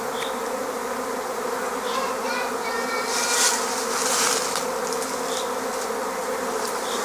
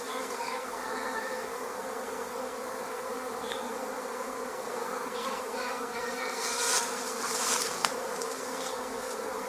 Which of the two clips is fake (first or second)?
second